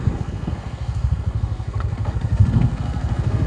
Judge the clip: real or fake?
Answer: fake